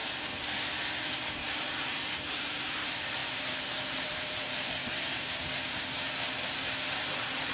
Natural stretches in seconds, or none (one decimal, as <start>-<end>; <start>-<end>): 0.0-1.4; 4.8-6.3